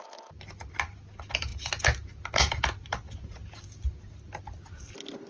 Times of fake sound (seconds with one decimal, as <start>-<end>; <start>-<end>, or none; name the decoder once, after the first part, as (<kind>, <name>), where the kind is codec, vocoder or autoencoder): none